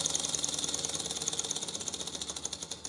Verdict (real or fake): real